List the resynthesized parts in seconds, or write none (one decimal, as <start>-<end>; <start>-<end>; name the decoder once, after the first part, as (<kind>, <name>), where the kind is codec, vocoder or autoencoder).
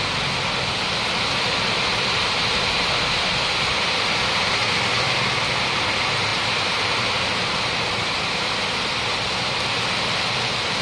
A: 6.3-8.5 (vocoder, BigVGAN v2)